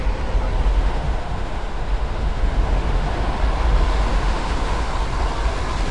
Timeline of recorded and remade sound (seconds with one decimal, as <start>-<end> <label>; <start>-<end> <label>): 0.0-0.7 recorded; 0.7-3.3 remade; 3.3-4.1 recorded; 4.1-4.9 remade; 4.9-5.9 recorded